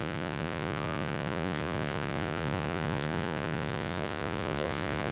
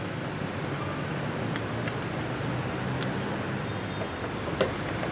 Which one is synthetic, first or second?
first